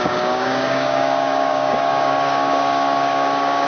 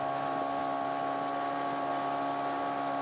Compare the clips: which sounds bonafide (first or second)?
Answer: second